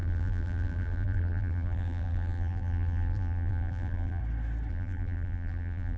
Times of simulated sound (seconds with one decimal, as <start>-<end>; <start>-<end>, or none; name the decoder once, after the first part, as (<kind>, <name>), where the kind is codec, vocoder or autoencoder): 0.0-4.2 (vocoder, BigVGAN v2); 4.7-6.0